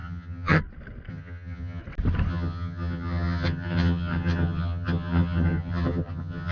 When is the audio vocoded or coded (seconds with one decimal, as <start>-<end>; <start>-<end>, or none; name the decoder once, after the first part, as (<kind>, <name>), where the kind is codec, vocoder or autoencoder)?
0.0-0.6 (vocoder, HiFi-GAN); 1.1-1.8; 2.3-6.5